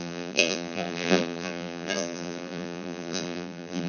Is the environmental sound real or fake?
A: fake